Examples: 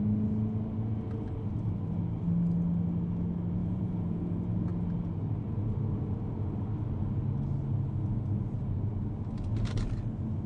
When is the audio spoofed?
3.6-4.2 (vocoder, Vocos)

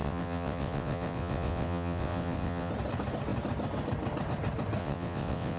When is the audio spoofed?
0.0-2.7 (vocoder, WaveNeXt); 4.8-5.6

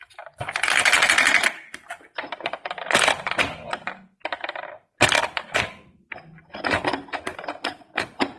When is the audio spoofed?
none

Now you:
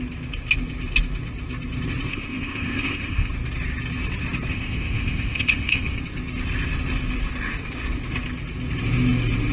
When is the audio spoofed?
2.1-3.3 (codec, ZipCodec); 4.5-6.0

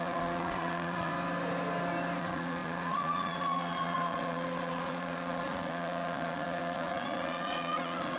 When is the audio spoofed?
0.0-1.1 (vocoder, Vocos); 2.2-8.2

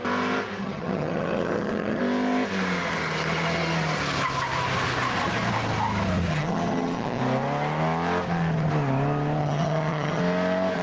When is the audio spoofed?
0.6-2.0 (vocoder, HiFi-GAN); 6.3-7.2; 9.4-10.2